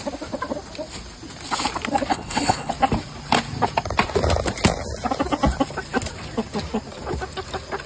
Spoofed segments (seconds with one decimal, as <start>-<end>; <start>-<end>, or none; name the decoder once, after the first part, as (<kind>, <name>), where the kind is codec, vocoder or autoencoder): 2.1-2.7 (codec, HILCodec)